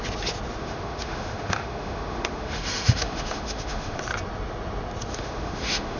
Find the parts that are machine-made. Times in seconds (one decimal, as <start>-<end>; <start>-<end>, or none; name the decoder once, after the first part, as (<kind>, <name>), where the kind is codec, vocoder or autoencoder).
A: 0.6-4.0 (autoencoder, DAC-VAE); 5.1-6.0